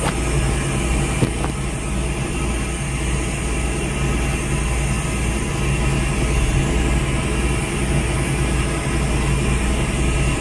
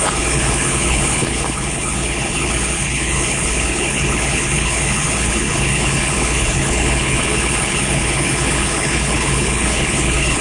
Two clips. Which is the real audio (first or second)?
first